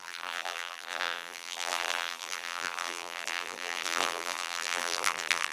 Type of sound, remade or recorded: remade